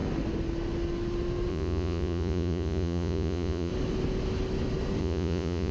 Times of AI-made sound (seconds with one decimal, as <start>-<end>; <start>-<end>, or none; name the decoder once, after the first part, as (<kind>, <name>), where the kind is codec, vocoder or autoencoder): 1.5-3.7 (vocoder, Vocos); 5.0-5.7